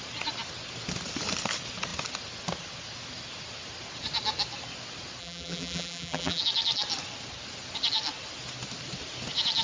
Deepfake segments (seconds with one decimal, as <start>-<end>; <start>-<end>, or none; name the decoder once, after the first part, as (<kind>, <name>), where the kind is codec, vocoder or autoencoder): 5.2-6.4 (vocoder, BigVGAN v2)